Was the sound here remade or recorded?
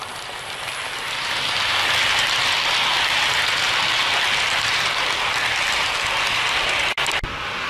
recorded